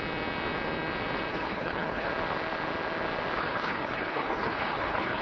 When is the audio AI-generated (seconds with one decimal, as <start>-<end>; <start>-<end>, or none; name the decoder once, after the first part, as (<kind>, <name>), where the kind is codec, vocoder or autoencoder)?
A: 1.3-2.1 (codec, HILCodec); 3.4-5.2